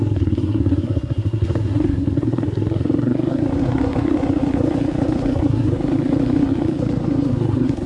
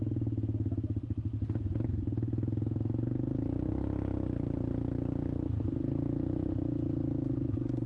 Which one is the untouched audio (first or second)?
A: second